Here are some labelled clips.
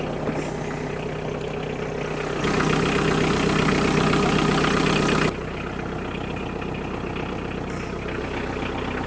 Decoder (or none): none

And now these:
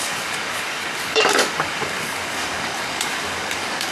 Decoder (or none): codec, DAC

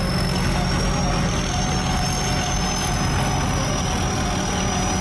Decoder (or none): none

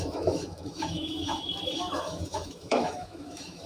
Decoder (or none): autoencoder, DAC-VAE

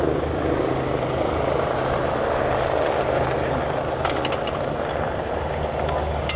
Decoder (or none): none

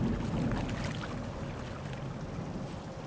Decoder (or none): none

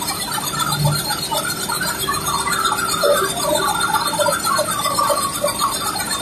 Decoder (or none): none